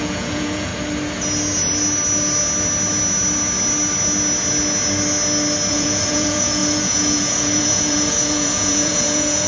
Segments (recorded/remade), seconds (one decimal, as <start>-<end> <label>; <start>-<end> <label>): 0.0-0.7 remade; 0.7-5.7 recorded; 5.7-9.5 remade